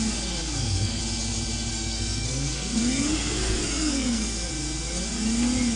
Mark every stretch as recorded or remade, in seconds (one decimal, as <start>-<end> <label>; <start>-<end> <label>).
0.0-0.4 recorded; 0.4-1.0 remade; 1.0-1.7 recorded; 1.7-4.5 remade; 4.5-5.8 recorded